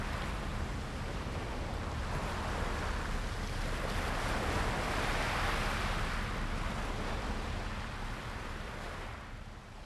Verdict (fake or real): real